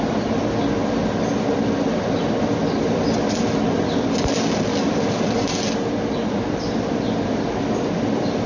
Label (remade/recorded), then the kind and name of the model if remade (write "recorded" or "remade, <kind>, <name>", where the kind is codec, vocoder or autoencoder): recorded